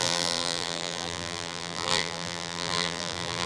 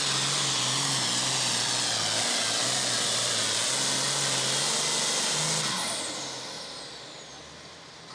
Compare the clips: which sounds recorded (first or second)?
second